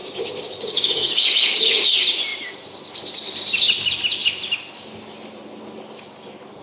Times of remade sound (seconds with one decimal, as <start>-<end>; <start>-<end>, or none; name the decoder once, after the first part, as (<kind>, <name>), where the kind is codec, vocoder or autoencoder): 0.0-1.9 (codec, DAC)